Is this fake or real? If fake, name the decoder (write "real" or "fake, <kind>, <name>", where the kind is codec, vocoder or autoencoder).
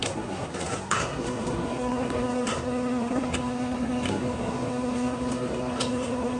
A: fake, codec, SNAC